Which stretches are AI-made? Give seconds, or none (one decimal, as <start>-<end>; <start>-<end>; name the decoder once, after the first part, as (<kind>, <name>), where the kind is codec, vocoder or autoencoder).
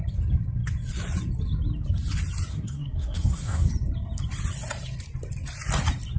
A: 2.5-3.7 (codec, SNAC)